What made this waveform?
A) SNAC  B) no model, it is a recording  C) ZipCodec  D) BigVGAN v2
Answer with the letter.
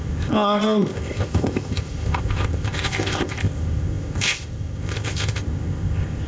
C